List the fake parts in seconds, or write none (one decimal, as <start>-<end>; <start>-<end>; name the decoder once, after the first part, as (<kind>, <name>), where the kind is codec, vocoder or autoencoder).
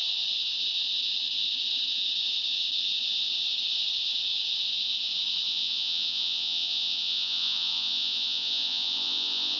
5.5-9.6 (vocoder, Vocos)